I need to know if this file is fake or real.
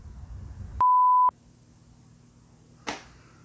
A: real